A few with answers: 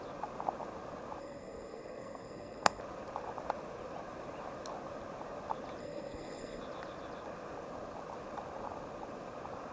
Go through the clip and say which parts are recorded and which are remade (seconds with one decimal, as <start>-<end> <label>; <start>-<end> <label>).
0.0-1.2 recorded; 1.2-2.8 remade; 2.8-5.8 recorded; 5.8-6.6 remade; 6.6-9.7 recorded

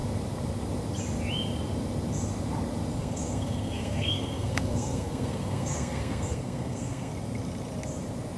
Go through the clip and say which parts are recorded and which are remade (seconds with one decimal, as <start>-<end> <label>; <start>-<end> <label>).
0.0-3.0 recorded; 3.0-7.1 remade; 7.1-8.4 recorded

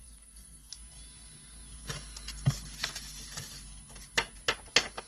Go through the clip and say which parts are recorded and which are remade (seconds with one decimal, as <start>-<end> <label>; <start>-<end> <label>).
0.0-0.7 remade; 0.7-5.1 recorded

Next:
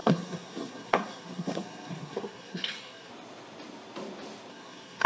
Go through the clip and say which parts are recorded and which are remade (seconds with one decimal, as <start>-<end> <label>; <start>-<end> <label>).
0.0-3.1 remade; 3.1-4.5 recorded; 4.5-5.1 remade

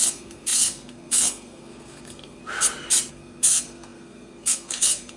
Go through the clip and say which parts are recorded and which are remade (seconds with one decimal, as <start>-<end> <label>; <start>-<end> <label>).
0.0-2.4 remade; 2.4-3.1 recorded; 3.1-5.2 remade

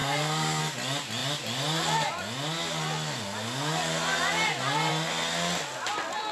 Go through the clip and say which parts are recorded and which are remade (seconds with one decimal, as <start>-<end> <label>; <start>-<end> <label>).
0.0-0.6 remade; 0.6-6.3 recorded

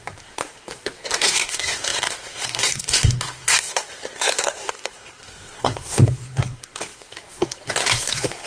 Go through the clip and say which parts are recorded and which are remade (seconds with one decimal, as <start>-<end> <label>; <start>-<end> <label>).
0.0-8.5 remade